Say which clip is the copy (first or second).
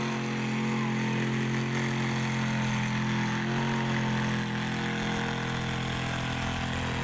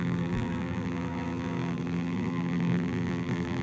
second